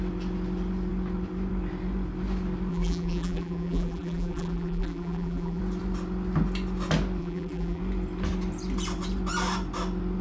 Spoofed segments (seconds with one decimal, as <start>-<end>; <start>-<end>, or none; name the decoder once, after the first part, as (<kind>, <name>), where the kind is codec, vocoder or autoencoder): 2.7-5.6 (vocoder, BigVGAN v2); 7.2-7.8